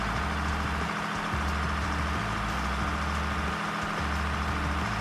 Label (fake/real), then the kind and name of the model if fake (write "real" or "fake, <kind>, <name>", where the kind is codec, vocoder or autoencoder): real